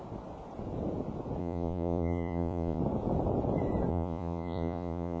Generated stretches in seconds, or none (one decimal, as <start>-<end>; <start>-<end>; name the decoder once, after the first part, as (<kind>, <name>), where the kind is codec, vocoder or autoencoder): 1.4-2.8 (vocoder, Vocos); 3.9-5.2